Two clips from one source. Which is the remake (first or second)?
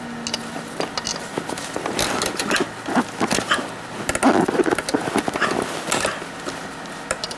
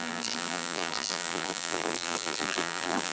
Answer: second